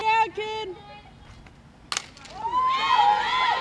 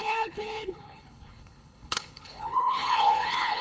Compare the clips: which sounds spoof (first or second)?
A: second